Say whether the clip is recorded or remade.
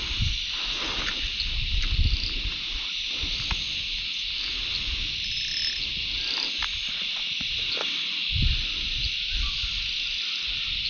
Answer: recorded